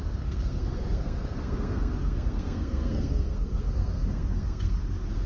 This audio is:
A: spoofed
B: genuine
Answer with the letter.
A